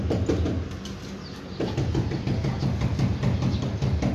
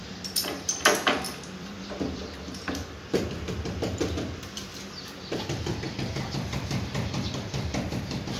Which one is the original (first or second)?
first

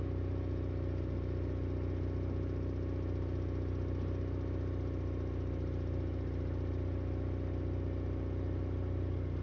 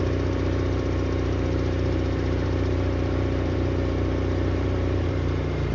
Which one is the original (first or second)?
first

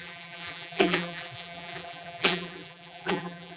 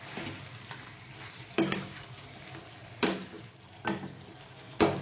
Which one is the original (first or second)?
second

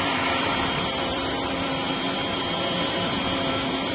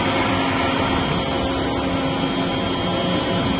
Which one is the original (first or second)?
second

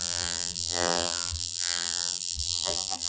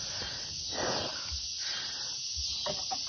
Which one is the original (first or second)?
second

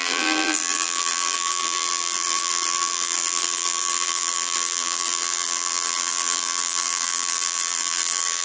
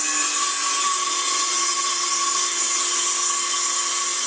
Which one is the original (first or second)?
second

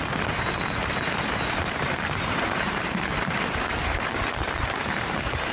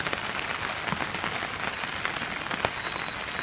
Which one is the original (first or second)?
second